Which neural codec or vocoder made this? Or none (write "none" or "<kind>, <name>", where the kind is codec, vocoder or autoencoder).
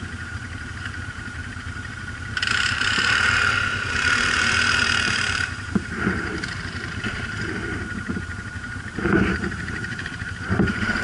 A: vocoder, BigVGAN v2